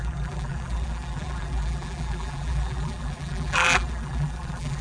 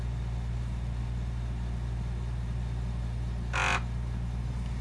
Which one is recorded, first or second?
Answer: second